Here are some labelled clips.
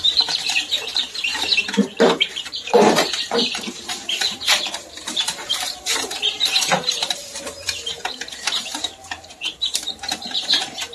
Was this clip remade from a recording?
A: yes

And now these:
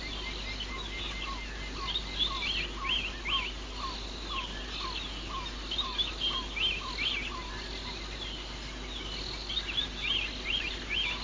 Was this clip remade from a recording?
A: no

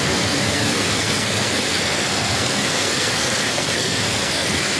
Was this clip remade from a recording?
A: yes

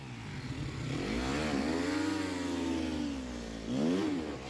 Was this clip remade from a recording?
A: no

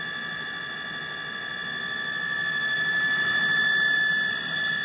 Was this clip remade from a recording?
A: no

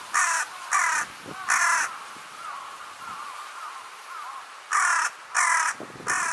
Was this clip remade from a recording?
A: no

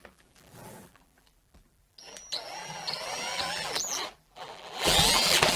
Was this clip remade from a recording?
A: yes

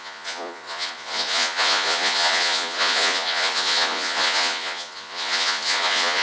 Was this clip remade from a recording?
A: yes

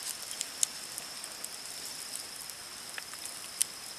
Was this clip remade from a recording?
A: no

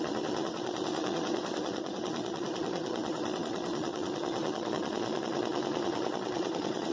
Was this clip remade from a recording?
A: yes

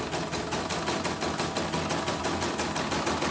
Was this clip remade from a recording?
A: no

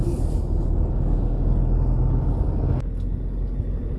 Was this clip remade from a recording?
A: no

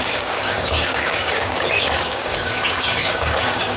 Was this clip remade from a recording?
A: yes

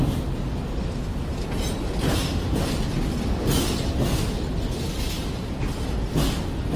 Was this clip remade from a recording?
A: no